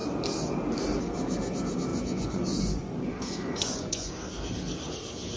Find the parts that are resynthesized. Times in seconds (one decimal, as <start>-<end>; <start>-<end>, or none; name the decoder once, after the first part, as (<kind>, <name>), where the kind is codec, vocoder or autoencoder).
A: 1.9-4.1 (vocoder, Vocos)